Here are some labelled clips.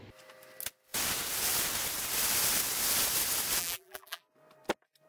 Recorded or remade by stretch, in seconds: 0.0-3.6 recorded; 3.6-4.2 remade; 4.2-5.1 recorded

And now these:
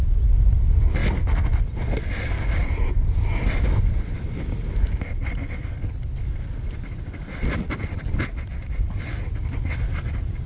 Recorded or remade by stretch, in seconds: 0.0-10.5 recorded